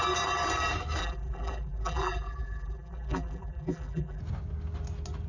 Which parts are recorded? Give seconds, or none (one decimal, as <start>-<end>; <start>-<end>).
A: 0.0-1.0; 4.2-5.3